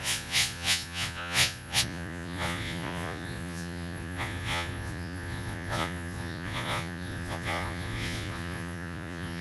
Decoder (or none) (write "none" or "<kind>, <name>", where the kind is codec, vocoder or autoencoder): vocoder, Vocos